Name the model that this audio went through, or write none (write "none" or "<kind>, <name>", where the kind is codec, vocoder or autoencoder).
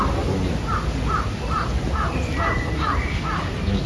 none